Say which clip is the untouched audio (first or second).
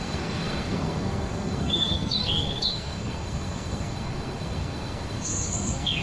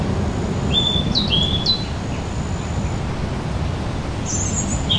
second